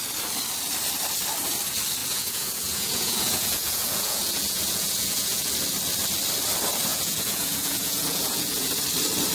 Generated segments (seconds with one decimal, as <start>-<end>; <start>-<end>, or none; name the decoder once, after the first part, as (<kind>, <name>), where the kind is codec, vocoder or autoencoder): 2.0-5.5 (vocoder, Vocos); 6.9-8.7